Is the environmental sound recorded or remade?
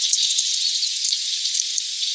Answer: remade